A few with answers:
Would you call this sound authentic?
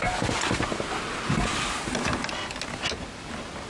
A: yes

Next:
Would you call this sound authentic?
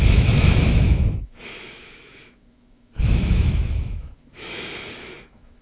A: no